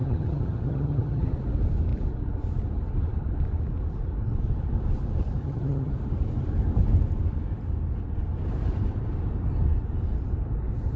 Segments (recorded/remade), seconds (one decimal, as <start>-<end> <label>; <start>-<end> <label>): 0.0-1.3 remade; 1.3-5.4 recorded; 5.4-5.9 remade; 5.9-11.0 recorded